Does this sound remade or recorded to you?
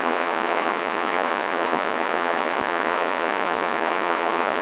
remade